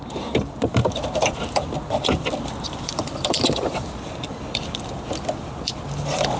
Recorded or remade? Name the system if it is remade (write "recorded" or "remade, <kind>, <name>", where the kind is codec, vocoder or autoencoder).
remade, vocoder, BigVGAN v2